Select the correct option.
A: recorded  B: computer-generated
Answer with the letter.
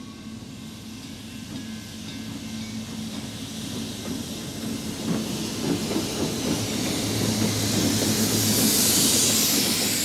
A